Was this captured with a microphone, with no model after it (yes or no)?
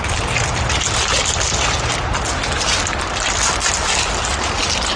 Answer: yes